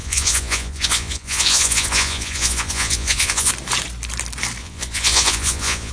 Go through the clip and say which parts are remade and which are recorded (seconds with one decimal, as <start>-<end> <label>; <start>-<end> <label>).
0.0-3.5 remade; 3.5-4.6 recorded; 4.6-5.9 remade